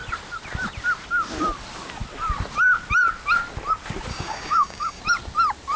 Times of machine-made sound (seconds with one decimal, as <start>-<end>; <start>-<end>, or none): 4.1-5.0